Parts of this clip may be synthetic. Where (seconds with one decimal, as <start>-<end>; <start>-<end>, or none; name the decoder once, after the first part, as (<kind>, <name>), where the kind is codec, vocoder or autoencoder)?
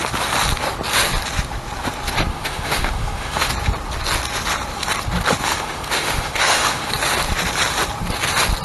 2.3-3.5 (autoencoder, DAC-VAE); 5.5-6.9